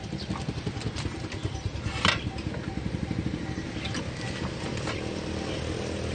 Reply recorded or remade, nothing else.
recorded